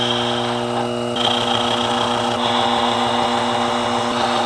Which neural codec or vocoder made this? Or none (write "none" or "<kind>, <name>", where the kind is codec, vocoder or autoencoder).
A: none